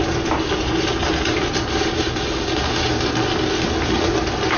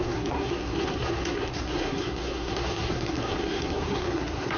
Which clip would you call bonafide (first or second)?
first